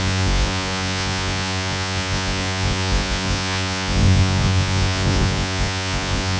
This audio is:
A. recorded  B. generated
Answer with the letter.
B